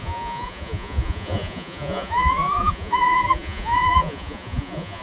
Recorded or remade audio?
remade